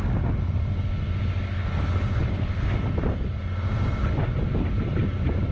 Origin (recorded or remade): recorded